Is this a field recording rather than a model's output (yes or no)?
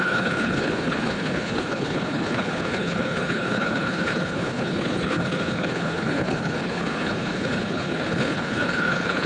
no